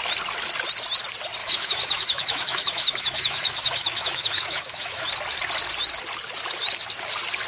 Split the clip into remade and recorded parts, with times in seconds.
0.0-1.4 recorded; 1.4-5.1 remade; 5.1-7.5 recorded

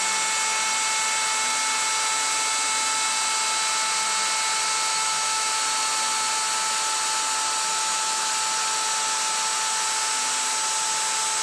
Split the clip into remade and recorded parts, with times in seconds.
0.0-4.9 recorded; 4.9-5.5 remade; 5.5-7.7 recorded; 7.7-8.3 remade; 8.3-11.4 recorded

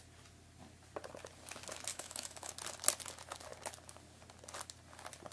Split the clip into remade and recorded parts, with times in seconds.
0.0-1.9 recorded; 1.9-2.5 remade; 2.5-5.3 recorded

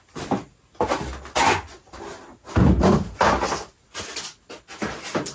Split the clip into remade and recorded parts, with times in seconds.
0.0-5.3 recorded

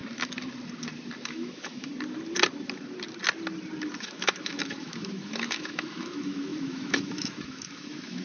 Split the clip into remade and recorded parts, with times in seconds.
0.0-1.2 recorded; 1.2-1.9 remade; 1.9-4.0 recorded; 4.0-8.2 remade

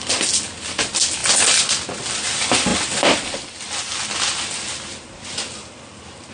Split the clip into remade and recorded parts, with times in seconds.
0.0-6.3 recorded

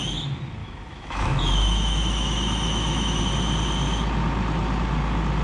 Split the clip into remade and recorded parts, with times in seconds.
0.0-0.6 recorded; 0.6-3.2 remade; 3.2-5.4 recorded

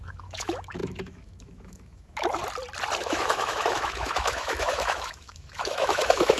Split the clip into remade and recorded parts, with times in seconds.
0.0-2.4 remade; 2.4-3.0 recorded; 3.0-6.4 remade